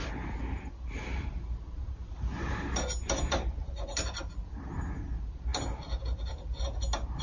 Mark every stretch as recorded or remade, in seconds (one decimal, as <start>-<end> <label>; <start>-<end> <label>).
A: 0.0-7.2 recorded